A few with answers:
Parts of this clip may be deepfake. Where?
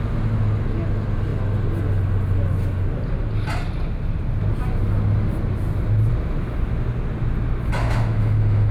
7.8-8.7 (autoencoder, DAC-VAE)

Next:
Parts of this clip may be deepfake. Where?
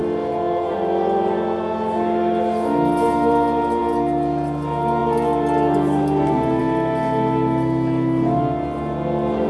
none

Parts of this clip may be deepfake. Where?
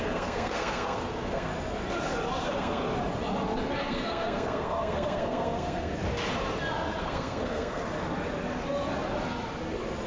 0.0-1.5 (codec, SNAC); 2.4-2.8; 3.8-5.9; 7.0-7.8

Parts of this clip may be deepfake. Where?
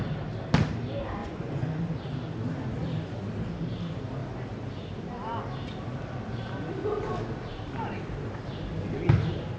1.2-1.8 (vocoder, Vocos)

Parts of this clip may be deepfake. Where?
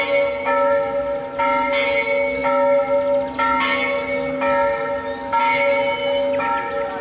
none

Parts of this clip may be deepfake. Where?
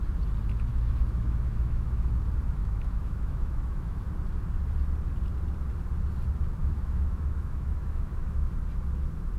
0.7-2.1 (autoencoder, DAC-VAE); 2.6-4.0; 6.6-8.5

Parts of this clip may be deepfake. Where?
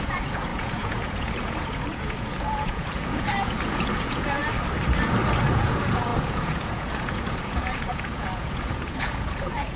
0.0-4.4 (vocoder, Vocos); 5.5-9.8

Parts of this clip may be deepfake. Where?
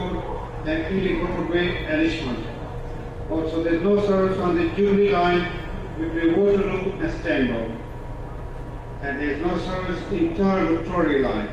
0.8-1.4 (codec, SNAC)